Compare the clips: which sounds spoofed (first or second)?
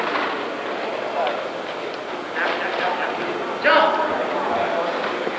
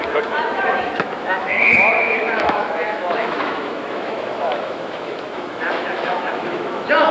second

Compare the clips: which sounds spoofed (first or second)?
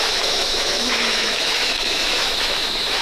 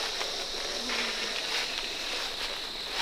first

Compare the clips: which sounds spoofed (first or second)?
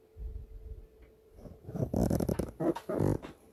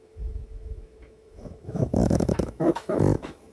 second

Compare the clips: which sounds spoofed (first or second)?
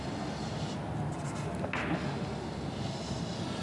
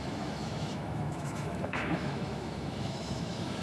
second